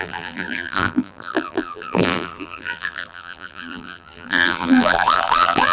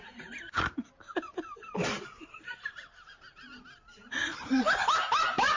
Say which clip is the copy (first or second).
first